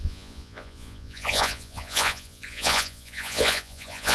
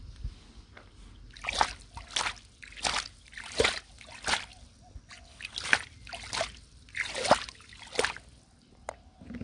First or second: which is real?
second